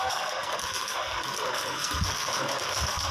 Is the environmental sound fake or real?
fake